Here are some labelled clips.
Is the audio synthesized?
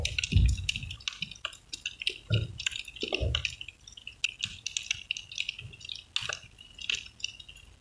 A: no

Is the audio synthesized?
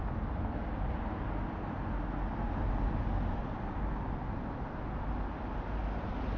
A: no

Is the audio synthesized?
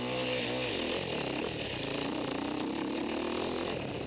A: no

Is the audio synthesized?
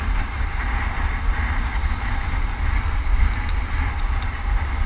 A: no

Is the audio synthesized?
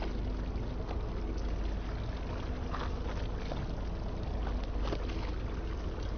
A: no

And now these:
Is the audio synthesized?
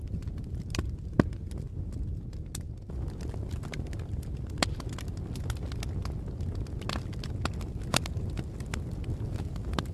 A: no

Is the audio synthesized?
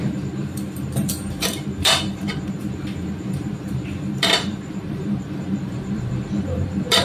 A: yes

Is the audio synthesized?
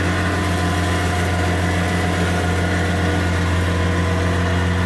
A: no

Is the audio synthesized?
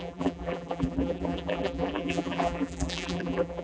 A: yes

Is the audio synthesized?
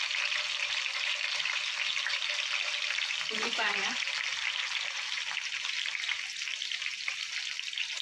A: yes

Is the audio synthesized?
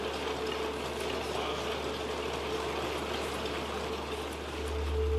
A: no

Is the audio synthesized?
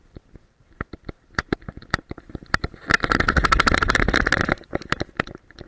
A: yes